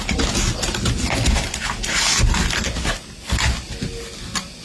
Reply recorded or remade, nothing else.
recorded